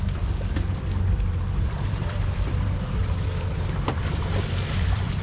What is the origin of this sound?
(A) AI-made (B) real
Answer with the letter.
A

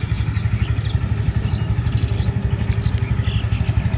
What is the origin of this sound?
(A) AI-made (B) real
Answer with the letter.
B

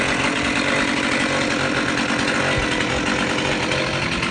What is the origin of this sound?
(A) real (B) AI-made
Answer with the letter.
A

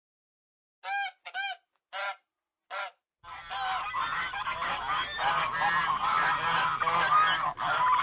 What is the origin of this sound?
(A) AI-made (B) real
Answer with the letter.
B